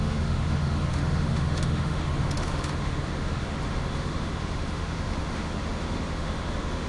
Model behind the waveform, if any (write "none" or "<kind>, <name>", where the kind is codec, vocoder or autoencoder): autoencoder, DAC-VAE